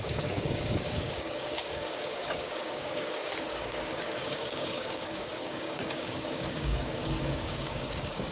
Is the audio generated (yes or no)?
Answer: yes